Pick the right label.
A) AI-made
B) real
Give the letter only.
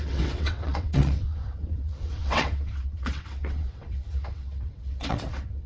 A